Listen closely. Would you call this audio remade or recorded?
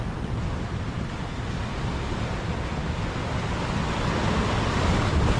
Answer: recorded